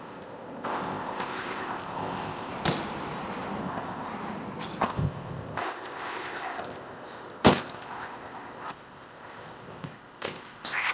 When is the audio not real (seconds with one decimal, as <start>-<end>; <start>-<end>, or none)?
0.0-2.5; 3.6-4.1; 4.8-10.9